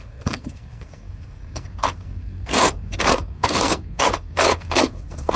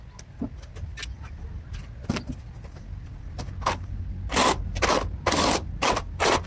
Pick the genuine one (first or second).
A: second